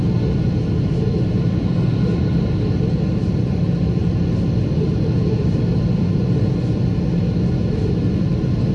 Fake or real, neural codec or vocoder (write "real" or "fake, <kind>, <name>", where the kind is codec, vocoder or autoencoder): real